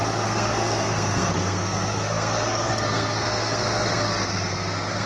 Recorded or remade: remade